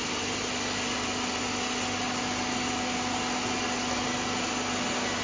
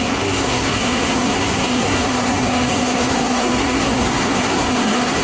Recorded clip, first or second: first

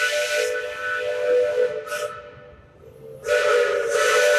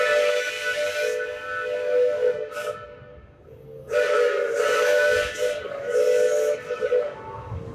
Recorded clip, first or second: first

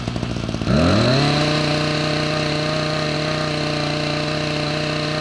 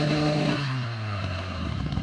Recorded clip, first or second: first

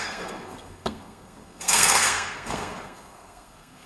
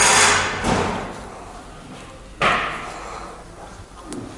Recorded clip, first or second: second